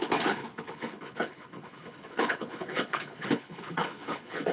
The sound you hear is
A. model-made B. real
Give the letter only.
A